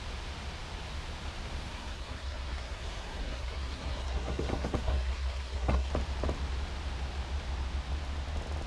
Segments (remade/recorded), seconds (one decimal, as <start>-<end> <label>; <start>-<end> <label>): 0.0-1.7 recorded; 1.7-5.9 remade; 5.9-8.7 recorded